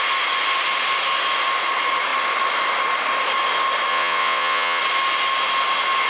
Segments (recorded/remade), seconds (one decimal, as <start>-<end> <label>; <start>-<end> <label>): 0.0-3.9 recorded; 3.9-4.8 remade; 4.8-6.1 recorded